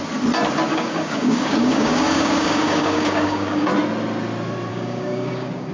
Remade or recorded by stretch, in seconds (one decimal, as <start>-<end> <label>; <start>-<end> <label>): 0.0-0.7 recorded; 0.7-3.7 remade; 3.7-4.7 recorded; 4.7-5.7 remade